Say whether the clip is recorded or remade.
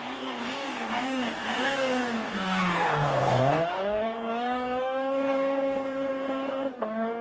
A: remade